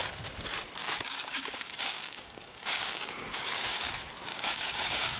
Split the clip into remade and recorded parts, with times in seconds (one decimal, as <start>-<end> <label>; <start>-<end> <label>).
0.0-0.8 recorded; 0.8-3.9 remade; 3.9-4.3 recorded; 4.3-5.2 remade